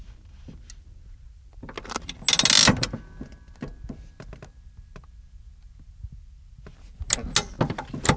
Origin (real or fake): real